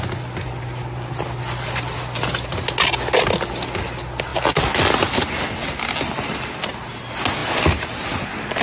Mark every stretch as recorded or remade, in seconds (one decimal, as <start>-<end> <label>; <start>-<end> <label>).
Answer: 0.0-8.6 recorded